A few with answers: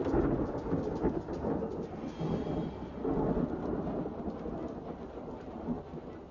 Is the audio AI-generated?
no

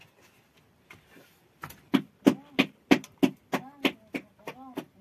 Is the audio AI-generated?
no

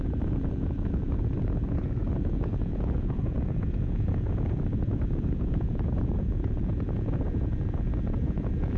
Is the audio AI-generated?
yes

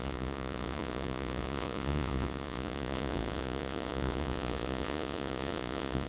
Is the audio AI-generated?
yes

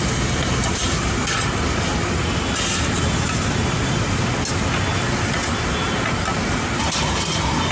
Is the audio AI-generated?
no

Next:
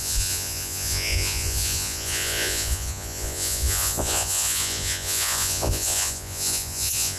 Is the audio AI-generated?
yes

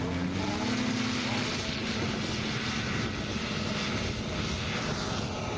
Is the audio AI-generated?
no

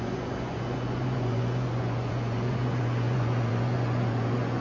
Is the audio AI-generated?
yes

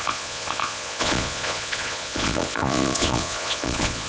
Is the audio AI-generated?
yes